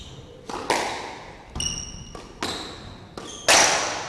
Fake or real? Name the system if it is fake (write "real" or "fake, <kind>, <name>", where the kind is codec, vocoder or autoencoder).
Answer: real